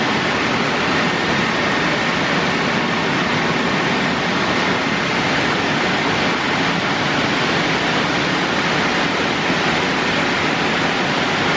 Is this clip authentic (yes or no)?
yes